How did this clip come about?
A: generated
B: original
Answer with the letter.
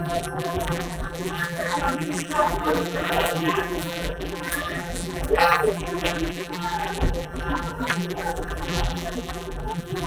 A